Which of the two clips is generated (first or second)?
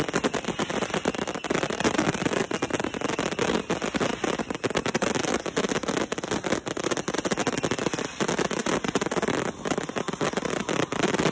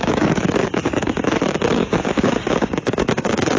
second